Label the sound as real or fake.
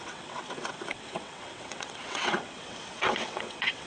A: fake